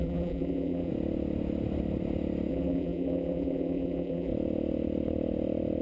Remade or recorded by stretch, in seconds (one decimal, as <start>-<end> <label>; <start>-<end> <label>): 0.0-0.9 remade; 0.9-2.5 recorded; 2.5-4.3 remade; 4.3-5.8 recorded